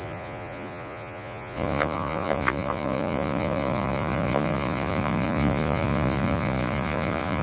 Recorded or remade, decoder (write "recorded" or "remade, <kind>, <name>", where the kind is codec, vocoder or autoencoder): remade, vocoder, Vocos